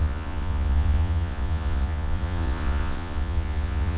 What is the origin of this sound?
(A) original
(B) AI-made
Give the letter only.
B